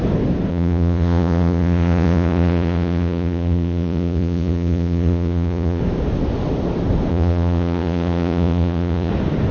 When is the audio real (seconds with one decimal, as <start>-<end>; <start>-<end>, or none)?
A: 0.0-0.5; 5.8-7.1; 9.1-9.5